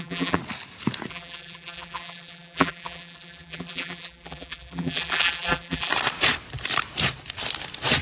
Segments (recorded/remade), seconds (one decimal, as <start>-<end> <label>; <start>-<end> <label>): 0.0-0.4 remade; 0.4-1.1 recorded; 1.1-5.9 remade; 5.9-8.0 recorded